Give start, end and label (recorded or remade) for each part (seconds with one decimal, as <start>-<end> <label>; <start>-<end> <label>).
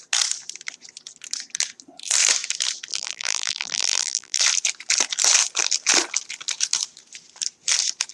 0.0-2.9 recorded; 2.9-4.4 remade; 4.4-8.1 recorded